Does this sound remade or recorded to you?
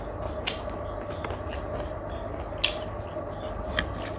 recorded